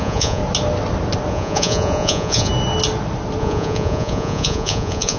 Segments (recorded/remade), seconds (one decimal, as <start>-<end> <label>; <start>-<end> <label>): 0.0-0.4 remade; 0.4-1.3 recorded; 1.3-2.5 remade; 2.5-3.4 recorded; 3.4-5.2 remade